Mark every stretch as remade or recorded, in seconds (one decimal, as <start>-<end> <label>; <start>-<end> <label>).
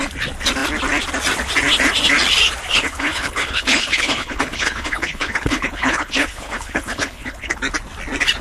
0.0-2.7 recorded; 2.7-7.6 remade; 7.6-8.4 recorded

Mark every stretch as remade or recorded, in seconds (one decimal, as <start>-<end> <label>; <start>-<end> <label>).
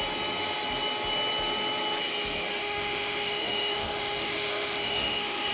0.0-2.6 recorded; 2.6-5.5 remade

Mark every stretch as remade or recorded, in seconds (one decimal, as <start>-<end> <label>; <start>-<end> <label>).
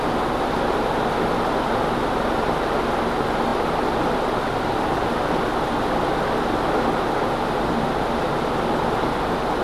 0.0-9.6 recorded